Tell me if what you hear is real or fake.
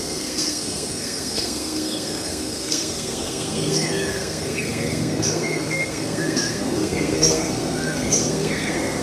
fake